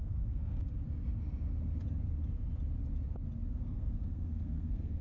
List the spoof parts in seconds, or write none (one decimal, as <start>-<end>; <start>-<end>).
0.0-0.6; 3.6-5.0